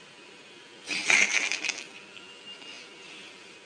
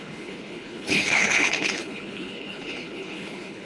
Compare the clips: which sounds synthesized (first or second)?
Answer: second